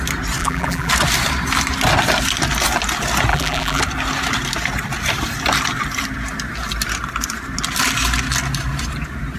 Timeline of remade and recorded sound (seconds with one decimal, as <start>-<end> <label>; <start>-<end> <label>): 0.0-0.4 recorded; 0.4-0.9 remade; 0.9-3.3 recorded; 3.3-3.8 remade; 3.8-9.4 recorded